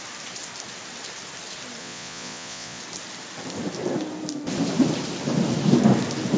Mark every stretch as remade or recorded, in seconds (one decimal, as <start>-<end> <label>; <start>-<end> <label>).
0.0-1.8 recorded; 1.8-2.8 remade; 2.8-6.4 recorded